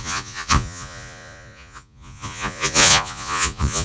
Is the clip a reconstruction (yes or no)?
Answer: yes